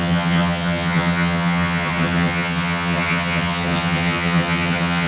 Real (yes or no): no